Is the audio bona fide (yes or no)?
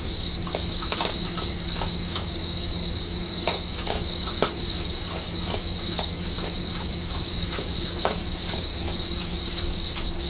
no